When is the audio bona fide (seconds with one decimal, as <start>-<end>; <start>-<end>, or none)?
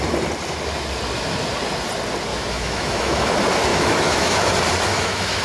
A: 0.0-2.3; 3.3-3.7; 4.5-4.9